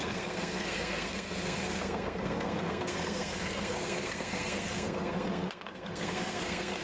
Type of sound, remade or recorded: remade